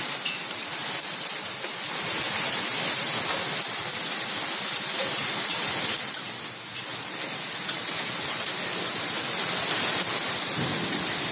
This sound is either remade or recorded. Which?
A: recorded